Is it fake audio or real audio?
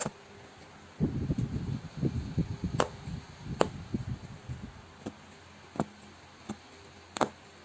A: real